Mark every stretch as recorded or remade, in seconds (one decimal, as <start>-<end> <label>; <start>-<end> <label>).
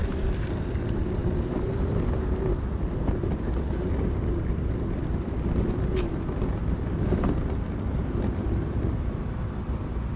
0.0-10.2 remade